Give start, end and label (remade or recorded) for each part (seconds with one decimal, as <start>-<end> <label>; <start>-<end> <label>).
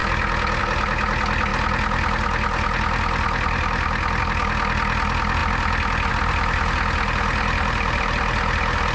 0.0-8.9 recorded